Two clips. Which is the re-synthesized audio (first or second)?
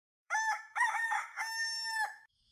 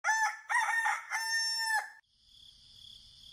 first